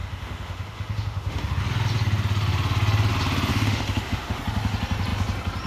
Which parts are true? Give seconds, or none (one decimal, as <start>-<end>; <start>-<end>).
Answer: 1.6-3.5; 4.4-5.7